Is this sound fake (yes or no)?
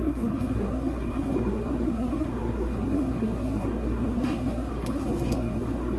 yes